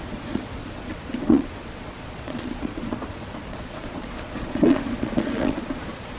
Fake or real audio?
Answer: fake